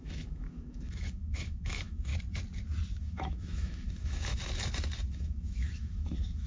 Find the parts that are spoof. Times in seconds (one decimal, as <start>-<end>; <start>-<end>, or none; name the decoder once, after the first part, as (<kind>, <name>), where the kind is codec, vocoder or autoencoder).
0.0-2.1 (autoencoder, DAC-VAE); 3.0-4.4; 5.1-6.5